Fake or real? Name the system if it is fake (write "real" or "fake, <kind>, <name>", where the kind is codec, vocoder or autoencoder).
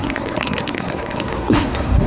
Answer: fake, codec, SNAC